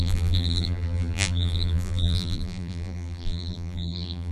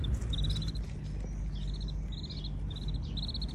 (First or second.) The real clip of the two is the second